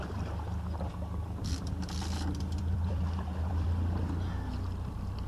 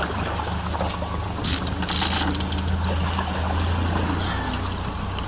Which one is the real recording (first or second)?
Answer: second